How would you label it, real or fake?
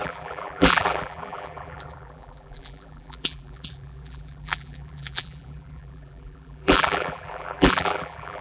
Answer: fake